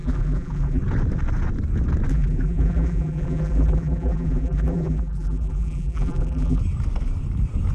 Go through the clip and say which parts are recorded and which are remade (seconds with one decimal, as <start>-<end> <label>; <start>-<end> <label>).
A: 0.0-0.8 remade; 0.8-2.1 recorded; 2.1-6.6 remade; 6.6-7.7 recorded